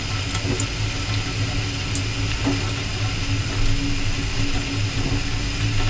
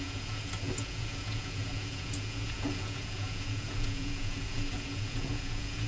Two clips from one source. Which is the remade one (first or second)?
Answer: second